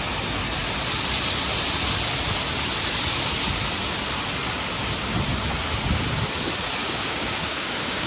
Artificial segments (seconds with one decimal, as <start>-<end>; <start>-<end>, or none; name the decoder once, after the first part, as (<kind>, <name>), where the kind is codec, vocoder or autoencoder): 6.8-8.1 (codec, DAC)